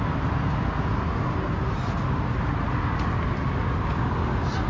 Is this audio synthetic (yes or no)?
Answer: no